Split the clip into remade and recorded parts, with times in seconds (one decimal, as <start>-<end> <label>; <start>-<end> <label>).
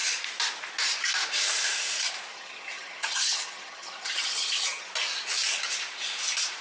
0.0-2.3 recorded; 2.3-4.9 remade; 4.9-6.6 recorded